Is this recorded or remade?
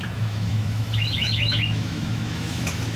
remade